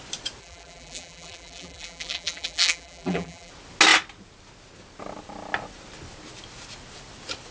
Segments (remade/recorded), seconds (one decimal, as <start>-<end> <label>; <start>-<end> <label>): 0.0-0.4 recorded; 0.4-3.5 remade; 3.5-7.5 recorded